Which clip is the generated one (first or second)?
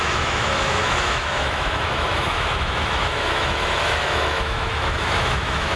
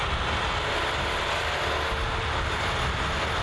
first